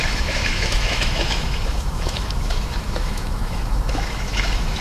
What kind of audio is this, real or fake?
fake